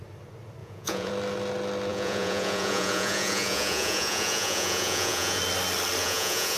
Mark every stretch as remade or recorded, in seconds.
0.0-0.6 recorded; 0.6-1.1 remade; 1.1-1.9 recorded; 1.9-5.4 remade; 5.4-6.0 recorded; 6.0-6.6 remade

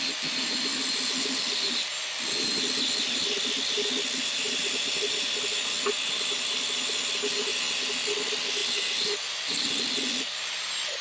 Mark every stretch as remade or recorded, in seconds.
0.0-11.0 recorded

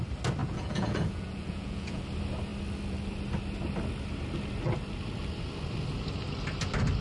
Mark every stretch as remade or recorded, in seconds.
0.0-0.4 recorded; 0.4-2.0 remade; 2.0-7.0 recorded